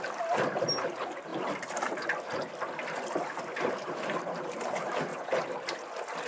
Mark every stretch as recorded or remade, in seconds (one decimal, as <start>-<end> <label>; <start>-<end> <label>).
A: 0.0-1.3 remade; 1.3-3.7 recorded; 3.7-5.1 remade; 5.1-6.3 recorded